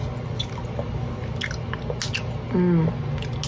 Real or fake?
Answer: real